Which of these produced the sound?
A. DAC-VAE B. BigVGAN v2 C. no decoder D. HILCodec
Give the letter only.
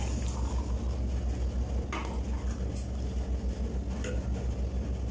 C